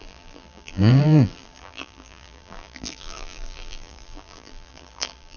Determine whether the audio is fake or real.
fake